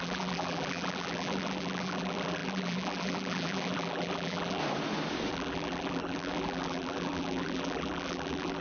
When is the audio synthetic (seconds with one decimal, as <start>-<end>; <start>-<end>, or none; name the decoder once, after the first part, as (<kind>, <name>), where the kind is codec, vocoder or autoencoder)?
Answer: 0.0-4.6 (vocoder, BigVGAN v2); 5.3-8.6